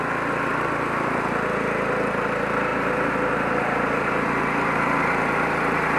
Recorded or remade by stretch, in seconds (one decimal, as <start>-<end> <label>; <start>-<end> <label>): 0.0-0.5 recorded; 0.5-1.3 remade; 1.3-2.7 recorded; 2.7-6.0 remade